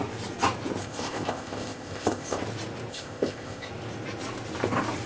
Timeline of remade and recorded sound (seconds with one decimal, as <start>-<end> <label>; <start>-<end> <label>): 0.0-0.8 recorded; 0.8-2.4 remade; 2.4-2.9 recorded; 2.9-3.7 remade; 3.7-5.1 recorded